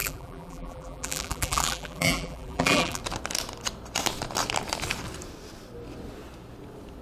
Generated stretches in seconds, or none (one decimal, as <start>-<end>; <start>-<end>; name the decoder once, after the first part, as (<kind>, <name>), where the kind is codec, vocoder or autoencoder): 0.0-3.0 (vocoder, BigVGAN v2)